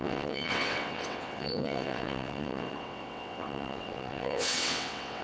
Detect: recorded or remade remade